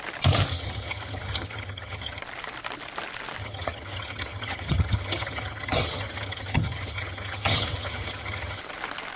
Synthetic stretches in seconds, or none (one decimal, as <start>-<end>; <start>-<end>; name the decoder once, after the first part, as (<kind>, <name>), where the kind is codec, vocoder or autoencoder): 0.5-2.2 (vocoder, HiFi-GAN); 3.4-8.6